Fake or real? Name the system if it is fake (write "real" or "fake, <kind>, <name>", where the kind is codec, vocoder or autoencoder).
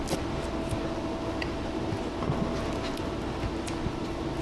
real